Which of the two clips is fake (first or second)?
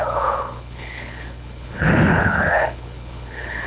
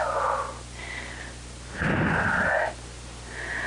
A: first